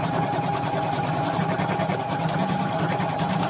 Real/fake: real